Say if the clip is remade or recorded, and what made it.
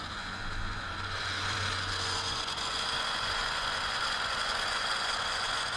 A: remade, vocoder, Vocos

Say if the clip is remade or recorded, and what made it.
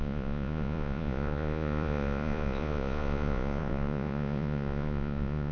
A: remade, vocoder, Vocos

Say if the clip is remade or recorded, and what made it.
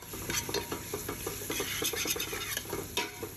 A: recorded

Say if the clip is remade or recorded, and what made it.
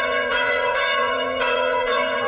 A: remade, vocoder, Vocos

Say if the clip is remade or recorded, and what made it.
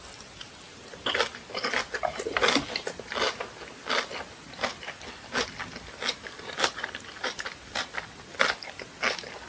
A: recorded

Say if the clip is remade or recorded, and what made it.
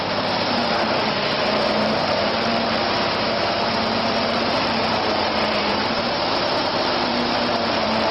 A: remade, vocoder, BigVGAN v2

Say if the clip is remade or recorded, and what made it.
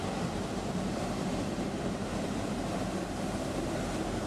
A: remade, vocoder, BigVGAN v2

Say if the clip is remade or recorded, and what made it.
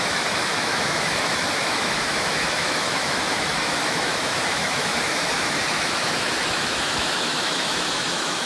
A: remade, autoencoder, DAC-VAE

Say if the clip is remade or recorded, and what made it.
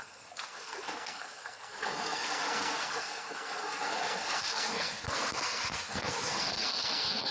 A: remade, codec, SNAC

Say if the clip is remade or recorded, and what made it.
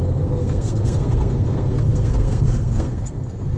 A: remade, codec, SNAC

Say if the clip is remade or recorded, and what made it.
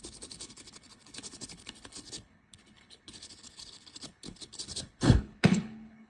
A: remade, codec, HILCodec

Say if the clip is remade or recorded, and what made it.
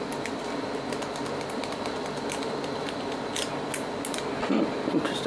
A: recorded